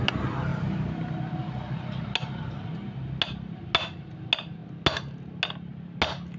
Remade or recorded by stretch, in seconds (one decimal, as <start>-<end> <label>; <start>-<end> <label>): 0.0-6.4 recorded